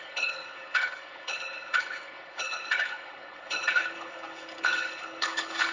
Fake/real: fake